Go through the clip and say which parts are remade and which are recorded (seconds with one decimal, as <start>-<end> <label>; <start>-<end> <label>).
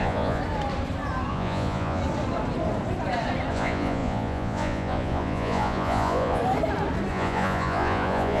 0.0-0.4 remade; 0.4-1.3 recorded; 1.3-2.0 remade; 2.0-3.5 recorded; 3.5-6.4 remade; 6.4-7.1 recorded; 7.1-8.4 remade